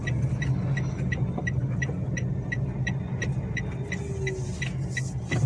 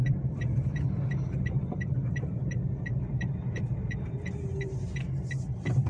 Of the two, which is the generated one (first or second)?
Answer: second